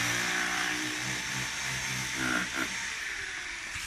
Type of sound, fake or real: real